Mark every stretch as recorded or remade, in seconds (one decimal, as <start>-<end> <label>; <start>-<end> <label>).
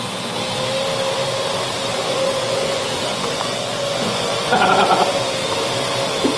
0.0-1.9 recorded; 1.9-5.0 remade; 5.0-6.4 recorded